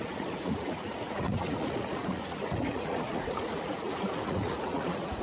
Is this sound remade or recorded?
remade